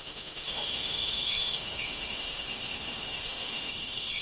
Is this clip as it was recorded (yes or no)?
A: no